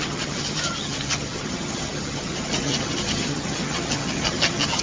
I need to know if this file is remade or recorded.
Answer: remade